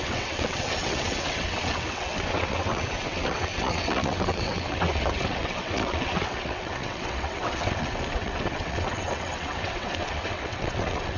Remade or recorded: remade